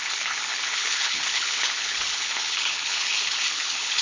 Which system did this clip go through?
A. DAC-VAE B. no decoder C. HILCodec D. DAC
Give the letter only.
C